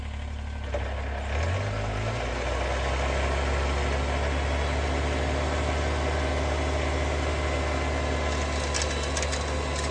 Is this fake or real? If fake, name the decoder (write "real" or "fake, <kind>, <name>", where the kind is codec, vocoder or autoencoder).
real